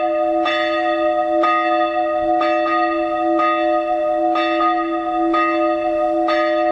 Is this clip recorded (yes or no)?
yes